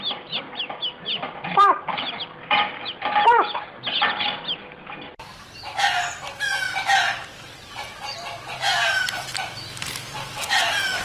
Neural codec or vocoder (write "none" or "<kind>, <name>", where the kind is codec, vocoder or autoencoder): vocoder, BigVGAN v2